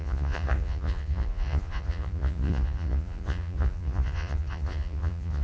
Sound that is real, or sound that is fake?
fake